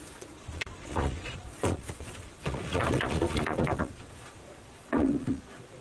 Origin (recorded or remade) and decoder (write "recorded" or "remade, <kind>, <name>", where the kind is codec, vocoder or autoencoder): remade, vocoder, Vocos